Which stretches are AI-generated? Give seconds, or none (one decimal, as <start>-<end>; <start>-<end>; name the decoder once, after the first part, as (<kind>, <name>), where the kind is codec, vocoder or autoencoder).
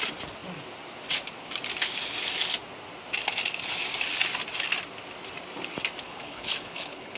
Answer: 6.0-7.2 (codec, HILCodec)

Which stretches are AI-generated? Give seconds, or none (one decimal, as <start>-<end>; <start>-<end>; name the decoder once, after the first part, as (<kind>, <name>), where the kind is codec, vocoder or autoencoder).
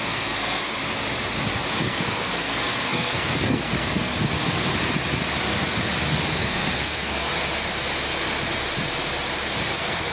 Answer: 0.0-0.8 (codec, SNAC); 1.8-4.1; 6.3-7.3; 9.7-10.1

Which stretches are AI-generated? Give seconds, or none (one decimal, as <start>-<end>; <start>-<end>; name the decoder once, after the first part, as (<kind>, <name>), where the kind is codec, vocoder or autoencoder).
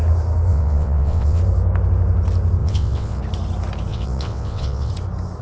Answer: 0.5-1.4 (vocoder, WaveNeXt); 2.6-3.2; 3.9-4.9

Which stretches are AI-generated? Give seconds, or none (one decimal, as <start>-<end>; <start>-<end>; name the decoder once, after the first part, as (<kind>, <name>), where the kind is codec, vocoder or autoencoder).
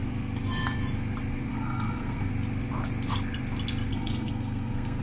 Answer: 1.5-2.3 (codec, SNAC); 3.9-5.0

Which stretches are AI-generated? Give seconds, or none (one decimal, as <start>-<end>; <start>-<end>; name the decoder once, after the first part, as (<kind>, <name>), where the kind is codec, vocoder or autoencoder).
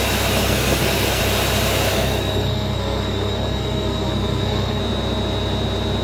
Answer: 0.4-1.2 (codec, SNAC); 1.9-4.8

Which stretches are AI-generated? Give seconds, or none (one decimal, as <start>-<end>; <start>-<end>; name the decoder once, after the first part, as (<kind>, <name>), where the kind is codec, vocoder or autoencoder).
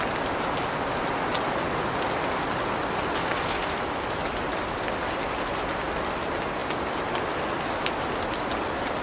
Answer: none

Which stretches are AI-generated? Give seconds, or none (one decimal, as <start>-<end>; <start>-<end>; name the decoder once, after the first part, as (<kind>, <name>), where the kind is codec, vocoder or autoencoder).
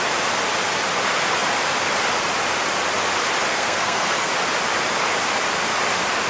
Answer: 3.5-4.3 (codec, SNAC)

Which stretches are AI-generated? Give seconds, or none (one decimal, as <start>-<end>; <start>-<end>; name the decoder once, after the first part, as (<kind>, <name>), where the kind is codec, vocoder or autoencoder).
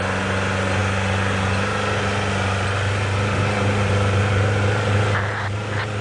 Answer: none